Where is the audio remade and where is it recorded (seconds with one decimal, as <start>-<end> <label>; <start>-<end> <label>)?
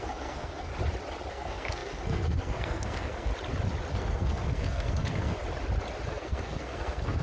0.0-0.7 remade; 0.7-1.3 recorded; 1.3-3.3 remade; 3.3-3.9 recorded; 3.9-5.4 remade; 5.4-6.1 recorded; 6.1-7.2 remade